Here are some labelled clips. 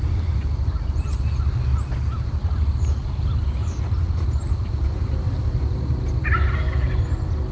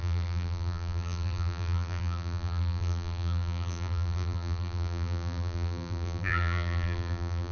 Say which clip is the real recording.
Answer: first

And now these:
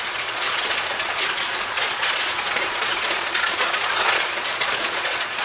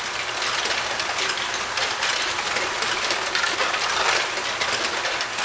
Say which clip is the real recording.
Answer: second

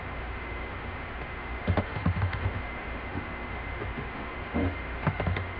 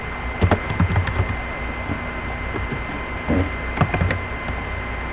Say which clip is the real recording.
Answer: second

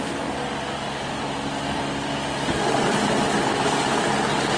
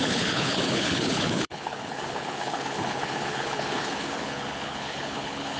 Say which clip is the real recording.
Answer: first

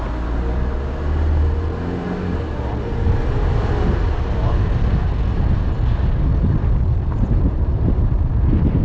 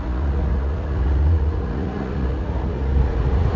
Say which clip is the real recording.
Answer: first